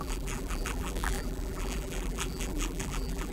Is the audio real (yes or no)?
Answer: no